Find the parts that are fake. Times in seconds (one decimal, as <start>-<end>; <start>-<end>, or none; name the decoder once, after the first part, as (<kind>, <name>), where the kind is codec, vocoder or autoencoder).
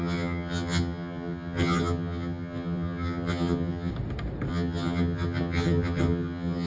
0.0-3.9 (vocoder, HiFi-GAN); 4.5-6.7